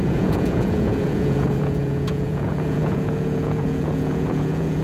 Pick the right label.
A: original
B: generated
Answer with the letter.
B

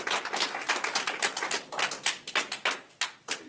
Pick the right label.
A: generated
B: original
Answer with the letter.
B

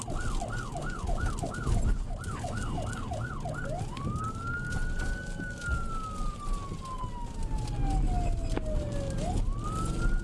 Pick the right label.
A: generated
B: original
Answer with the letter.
B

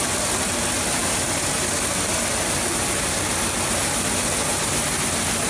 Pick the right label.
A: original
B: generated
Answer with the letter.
A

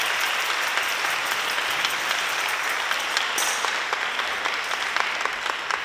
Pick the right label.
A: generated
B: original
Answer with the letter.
B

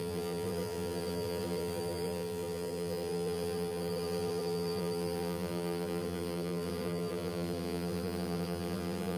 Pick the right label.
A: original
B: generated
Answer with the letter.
B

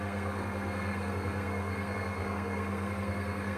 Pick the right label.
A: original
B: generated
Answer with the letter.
B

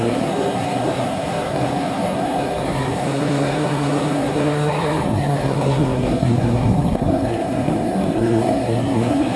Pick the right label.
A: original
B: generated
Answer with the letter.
B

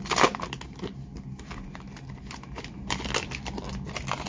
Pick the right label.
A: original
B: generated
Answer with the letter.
A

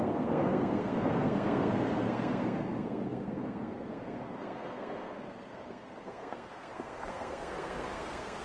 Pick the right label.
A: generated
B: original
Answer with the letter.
A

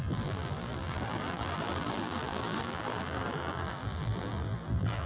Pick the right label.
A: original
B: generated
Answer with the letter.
B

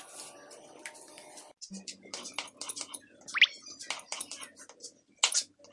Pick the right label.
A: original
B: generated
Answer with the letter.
A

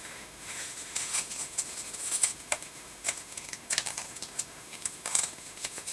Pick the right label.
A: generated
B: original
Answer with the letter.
A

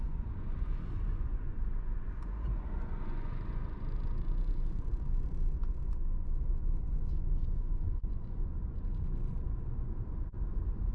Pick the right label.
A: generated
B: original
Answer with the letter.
A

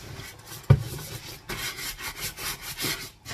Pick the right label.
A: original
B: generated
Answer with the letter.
A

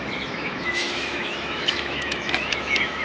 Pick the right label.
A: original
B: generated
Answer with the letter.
B